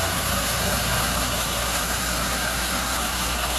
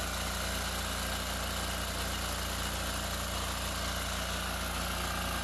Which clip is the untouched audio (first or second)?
second